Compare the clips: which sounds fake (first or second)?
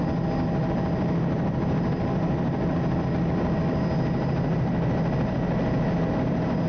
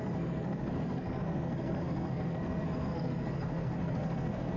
second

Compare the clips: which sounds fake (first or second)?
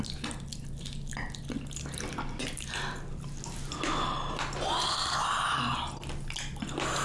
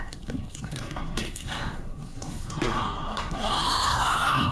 second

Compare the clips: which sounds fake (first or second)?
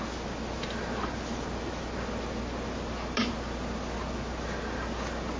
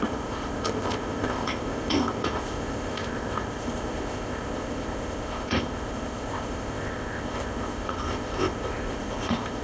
second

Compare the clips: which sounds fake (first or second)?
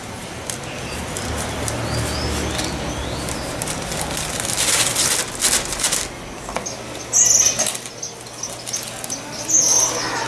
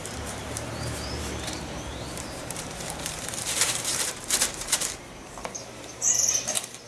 second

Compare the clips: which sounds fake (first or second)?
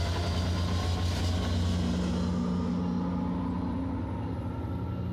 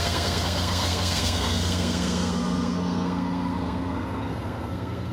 second